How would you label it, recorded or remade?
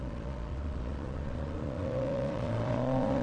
remade